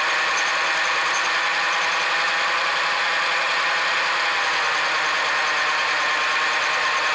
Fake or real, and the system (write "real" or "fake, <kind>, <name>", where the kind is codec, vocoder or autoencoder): real